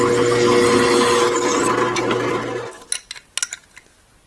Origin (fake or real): real